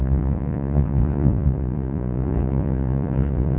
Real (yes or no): no